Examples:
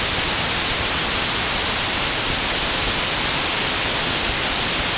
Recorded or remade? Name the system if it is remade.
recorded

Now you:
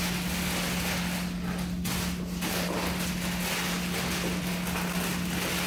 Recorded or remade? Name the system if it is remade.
recorded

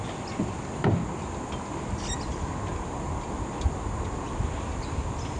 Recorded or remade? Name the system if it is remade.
recorded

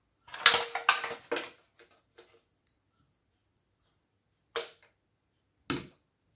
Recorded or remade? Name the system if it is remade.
recorded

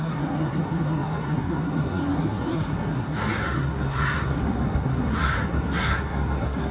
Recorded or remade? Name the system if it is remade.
remade, codec, SNAC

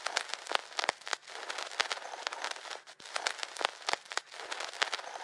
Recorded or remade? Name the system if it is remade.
recorded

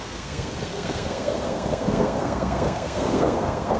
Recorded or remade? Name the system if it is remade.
remade, codec, SNAC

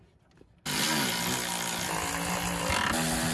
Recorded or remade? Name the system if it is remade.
recorded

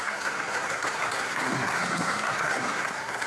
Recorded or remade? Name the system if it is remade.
remade, codec, SNAC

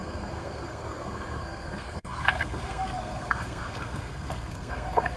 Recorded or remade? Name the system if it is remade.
remade, codec, SNAC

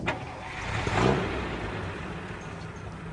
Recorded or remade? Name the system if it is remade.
recorded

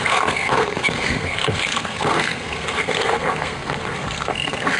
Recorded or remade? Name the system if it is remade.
remade, codec, SNAC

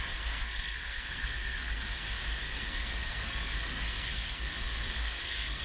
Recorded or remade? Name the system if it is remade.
remade, codec, SNAC